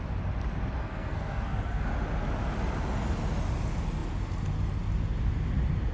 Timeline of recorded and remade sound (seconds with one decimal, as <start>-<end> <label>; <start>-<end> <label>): 0.0-0.8 recorded; 0.8-1.8 remade; 1.8-5.9 recorded